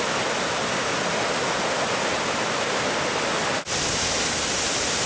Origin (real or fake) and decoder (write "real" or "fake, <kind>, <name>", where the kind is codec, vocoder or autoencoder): real